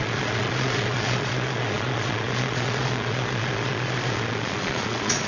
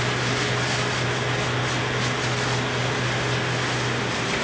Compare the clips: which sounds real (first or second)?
second